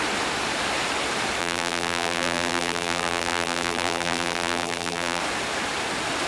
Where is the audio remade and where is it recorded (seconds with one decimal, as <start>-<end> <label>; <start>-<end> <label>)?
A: 0.0-1.4 recorded; 1.4-5.2 remade; 5.2-6.3 recorded